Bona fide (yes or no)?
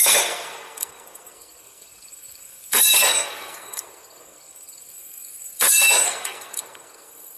no